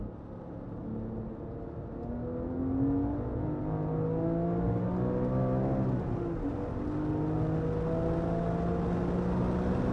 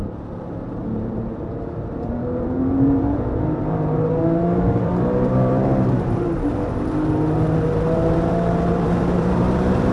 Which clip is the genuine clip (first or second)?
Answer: first